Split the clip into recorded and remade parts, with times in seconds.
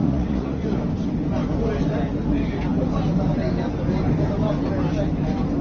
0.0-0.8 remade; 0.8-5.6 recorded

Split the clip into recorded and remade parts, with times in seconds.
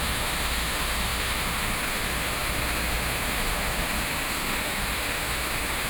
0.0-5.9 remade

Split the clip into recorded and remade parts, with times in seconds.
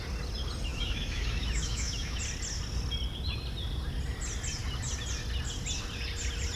0.0-0.7 recorded; 0.7-2.2 remade; 2.2-6.6 recorded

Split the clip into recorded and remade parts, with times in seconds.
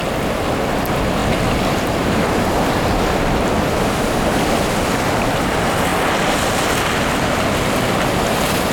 0.0-8.7 recorded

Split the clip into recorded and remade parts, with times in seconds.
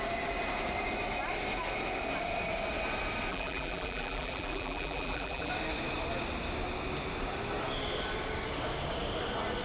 0.0-3.3 recorded; 3.3-5.5 remade; 5.5-9.6 recorded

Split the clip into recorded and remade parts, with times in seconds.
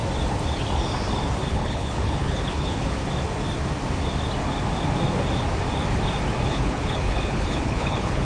0.0-1.5 recorded; 1.5-3.0 remade; 3.0-6.5 recorded; 6.5-8.2 remade